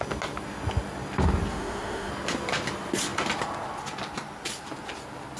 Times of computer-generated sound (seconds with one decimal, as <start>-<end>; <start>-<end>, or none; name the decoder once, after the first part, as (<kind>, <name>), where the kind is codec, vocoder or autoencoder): 1.5-2.1 (autoencoder, DAC-VAE)

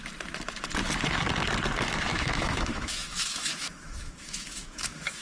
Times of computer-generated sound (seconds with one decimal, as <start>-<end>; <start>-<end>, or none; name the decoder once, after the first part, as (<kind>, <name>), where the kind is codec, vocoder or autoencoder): 2.1-5.2 (autoencoder, DAC-VAE)

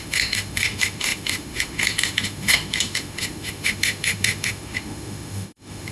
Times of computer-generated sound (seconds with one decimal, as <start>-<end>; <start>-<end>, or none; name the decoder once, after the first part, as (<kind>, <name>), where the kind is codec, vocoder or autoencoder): 0.0-5.9 (autoencoder, DAC-VAE)

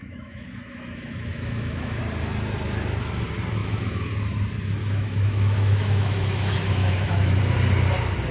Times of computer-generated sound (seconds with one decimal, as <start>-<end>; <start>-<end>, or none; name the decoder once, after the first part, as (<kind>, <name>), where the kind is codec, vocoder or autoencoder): 0.0-2.0 (autoencoder, DAC-VAE); 3.6-4.1; 4.8-7.4

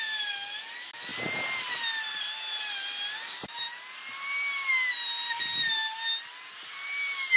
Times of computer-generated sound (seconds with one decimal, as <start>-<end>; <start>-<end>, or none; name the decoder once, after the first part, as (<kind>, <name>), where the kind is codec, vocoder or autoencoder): none

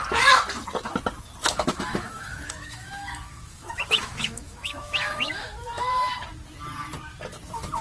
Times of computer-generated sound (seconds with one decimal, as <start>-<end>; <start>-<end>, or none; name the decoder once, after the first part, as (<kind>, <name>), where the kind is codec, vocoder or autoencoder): 1.4-6.1 (autoencoder, DAC-VAE)